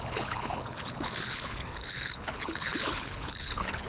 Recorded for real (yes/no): no